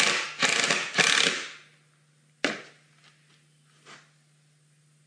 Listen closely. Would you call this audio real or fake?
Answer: real